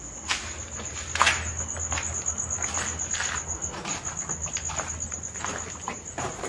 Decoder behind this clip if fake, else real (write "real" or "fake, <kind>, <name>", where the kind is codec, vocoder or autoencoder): real